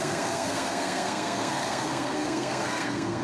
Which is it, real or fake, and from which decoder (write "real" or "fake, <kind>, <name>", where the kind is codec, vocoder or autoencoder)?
fake, codec, SNAC